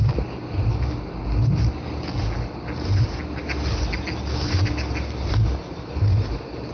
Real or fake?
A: real